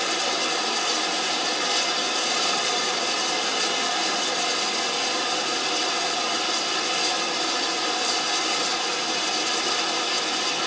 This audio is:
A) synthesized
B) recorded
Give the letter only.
B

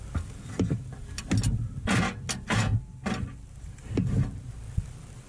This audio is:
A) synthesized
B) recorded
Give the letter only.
B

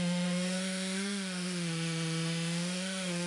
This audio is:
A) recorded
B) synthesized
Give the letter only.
B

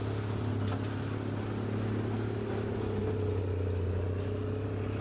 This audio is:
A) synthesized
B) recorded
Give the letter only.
B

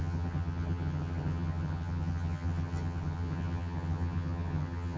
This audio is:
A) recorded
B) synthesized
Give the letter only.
B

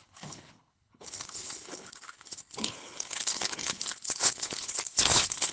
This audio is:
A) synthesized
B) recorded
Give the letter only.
A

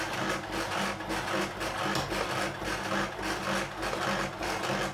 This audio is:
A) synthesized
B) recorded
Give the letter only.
B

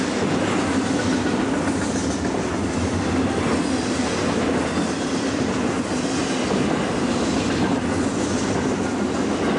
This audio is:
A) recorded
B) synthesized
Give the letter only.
A